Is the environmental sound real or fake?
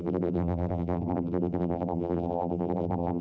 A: fake